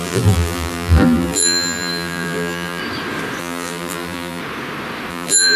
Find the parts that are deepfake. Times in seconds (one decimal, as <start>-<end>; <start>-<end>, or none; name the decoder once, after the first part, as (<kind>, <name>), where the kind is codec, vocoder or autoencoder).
0.0-2.8 (vocoder, BigVGAN v2); 3.4-4.4; 5.1-5.6